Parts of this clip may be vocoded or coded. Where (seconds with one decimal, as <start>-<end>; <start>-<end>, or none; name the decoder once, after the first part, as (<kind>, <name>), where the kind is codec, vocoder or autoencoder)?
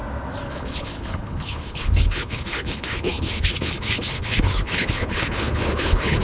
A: 0.5-6.2 (codec, HILCodec)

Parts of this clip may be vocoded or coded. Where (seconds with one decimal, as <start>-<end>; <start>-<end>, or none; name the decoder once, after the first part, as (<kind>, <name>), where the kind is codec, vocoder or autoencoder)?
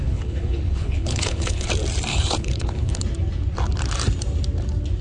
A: 0.0-1.7 (codec, HILCodec); 2.1-3.0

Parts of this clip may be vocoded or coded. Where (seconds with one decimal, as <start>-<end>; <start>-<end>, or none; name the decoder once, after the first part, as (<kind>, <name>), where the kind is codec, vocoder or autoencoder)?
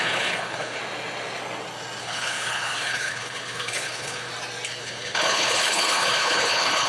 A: 0.0-0.8 (codec, HILCodec); 2.0-4.3; 4.8-6.9